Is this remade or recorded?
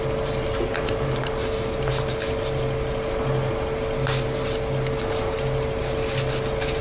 recorded